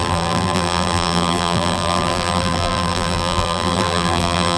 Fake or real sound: fake